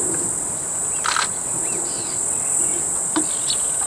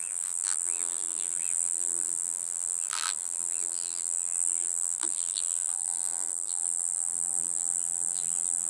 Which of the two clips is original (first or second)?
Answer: first